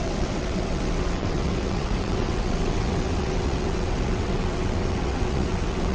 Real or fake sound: fake